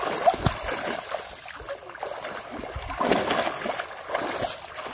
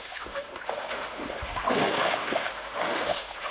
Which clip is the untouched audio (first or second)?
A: first